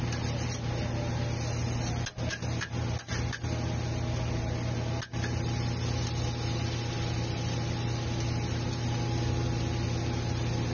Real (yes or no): yes